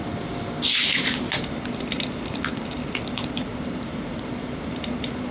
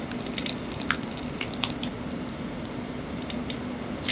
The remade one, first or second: first